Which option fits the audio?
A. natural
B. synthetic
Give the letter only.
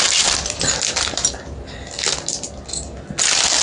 A